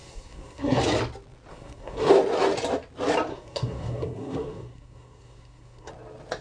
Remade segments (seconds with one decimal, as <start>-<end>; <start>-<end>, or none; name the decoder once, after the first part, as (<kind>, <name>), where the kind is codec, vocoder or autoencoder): 0.0-0.8 (codec, SNAC); 1.5-2.1; 3.3-5.9